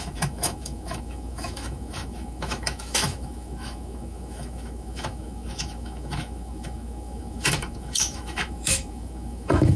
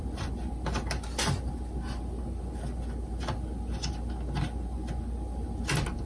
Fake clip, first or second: first